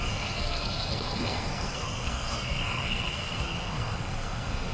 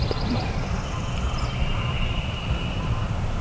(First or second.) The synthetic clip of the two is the first